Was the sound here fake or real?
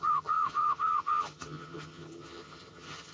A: fake